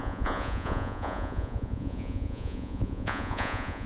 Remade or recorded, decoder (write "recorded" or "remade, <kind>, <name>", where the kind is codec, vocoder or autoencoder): remade, vocoder, Vocos